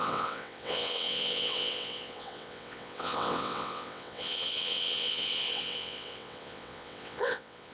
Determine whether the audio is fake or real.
fake